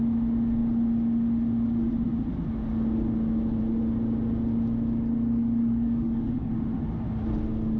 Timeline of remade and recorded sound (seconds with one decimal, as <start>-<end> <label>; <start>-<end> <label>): 0.0-5.4 recorded; 5.4-6.5 remade; 6.5-7.8 recorded